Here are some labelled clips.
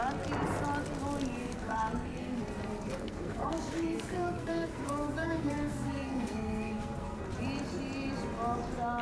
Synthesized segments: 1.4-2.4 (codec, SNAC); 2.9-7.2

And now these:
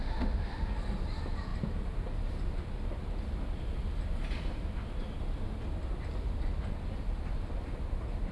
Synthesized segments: 0.0-0.7 (autoencoder, DAC-VAE)

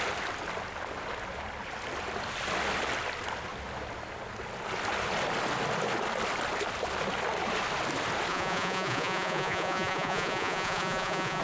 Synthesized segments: 8.3-11.4 (vocoder, Vocos)

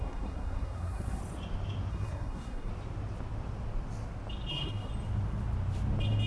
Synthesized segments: 0.0-1.2 (codec, SNAC); 1.9-2.7; 4.5-4.9

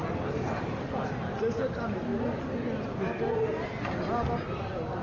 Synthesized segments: none

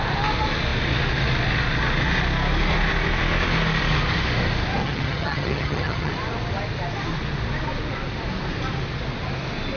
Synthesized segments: 4.8-6.1 (vocoder, HiFi-GAN)